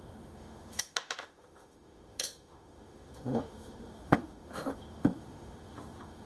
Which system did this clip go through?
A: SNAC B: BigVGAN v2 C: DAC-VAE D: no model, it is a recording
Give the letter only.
C